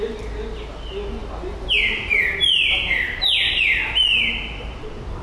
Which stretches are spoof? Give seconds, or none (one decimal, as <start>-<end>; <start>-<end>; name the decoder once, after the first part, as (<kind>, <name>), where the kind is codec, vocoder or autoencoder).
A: none